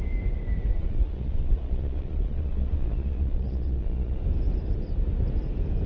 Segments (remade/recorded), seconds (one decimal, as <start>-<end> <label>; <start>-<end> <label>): 0.0-0.7 recorded; 0.7-4.2 remade; 4.2-5.9 recorded